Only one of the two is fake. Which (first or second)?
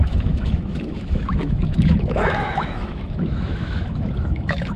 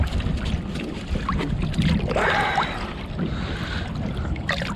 first